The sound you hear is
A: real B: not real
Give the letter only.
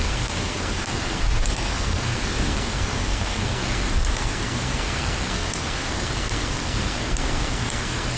B